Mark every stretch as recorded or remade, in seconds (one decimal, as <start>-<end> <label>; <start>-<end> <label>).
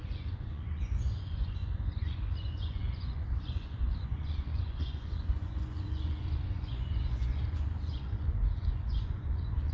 0.0-9.7 remade